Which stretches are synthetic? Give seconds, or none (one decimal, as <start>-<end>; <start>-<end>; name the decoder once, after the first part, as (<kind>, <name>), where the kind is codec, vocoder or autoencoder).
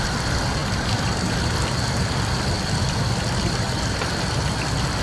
none